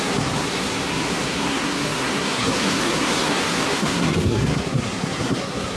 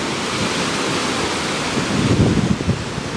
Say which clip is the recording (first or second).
second